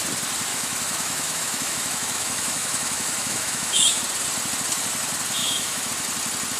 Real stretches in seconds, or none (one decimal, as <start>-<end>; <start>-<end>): 0.0-0.5; 4.0-5.4; 5.9-6.6

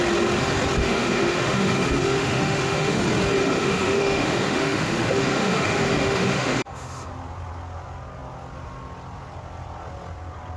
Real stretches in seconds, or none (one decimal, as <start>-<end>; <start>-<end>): 0.0-0.8; 3.0-3.4; 7.1-10.6

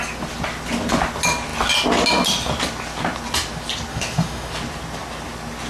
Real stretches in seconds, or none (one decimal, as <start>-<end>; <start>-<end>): 0.0-3.9; 4.5-5.7

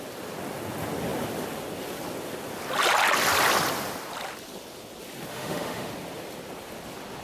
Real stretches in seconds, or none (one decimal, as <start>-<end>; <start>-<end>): 0.0-5.3; 5.9-7.2